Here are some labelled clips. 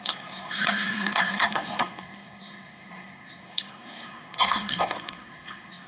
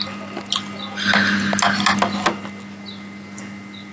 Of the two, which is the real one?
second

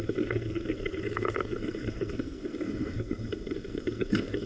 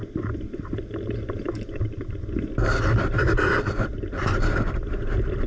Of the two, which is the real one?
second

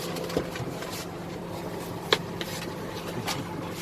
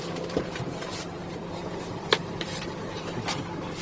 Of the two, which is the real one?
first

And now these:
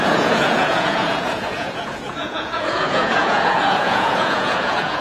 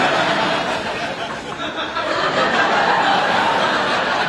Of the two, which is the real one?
second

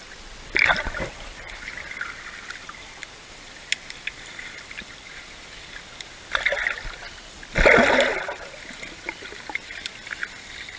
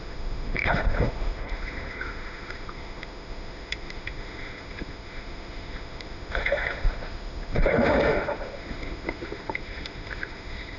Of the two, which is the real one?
first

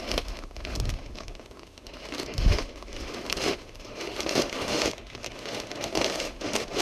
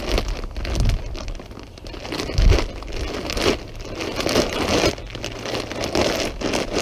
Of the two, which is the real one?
second